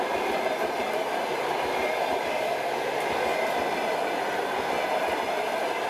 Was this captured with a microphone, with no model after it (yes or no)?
no